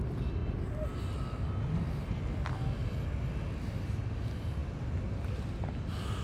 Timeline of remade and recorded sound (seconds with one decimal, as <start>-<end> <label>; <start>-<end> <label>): 0.0-6.2 recorded